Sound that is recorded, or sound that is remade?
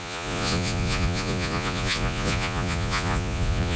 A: remade